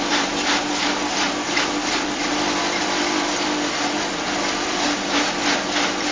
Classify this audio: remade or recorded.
remade